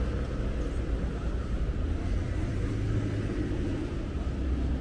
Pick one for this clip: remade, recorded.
recorded